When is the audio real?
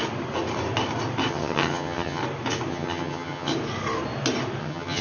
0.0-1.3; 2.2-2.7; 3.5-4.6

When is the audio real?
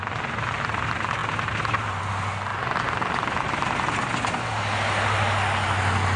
0.0-6.2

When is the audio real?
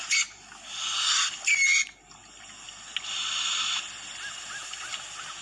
0.0-5.4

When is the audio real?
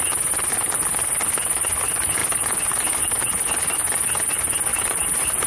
0.0-4.7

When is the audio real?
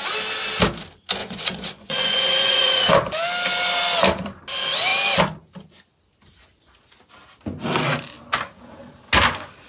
0.0-1.2; 2.9-9.7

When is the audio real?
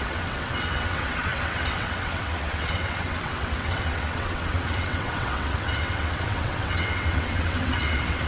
none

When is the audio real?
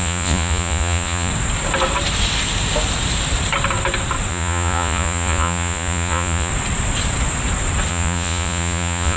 1.3-4.3; 6.5-7.9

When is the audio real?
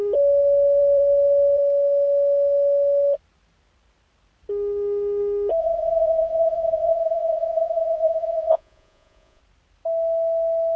0.0-5.6; 9.4-10.8